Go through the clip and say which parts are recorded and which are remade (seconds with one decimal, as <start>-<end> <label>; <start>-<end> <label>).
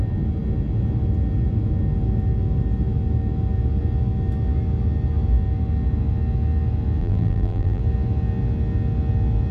0.0-7.0 recorded; 7.0-7.8 remade; 7.8-9.5 recorded